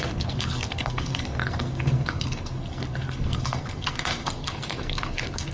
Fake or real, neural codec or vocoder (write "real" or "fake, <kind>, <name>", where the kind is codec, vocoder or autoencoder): fake, codec, SNAC